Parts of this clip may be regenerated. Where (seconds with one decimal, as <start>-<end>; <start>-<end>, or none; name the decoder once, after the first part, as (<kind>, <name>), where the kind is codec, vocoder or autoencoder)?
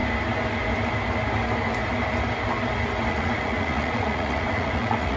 3.1-5.2 (vocoder, Vocos)